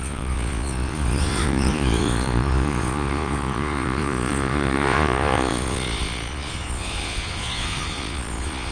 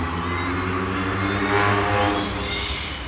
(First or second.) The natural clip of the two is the second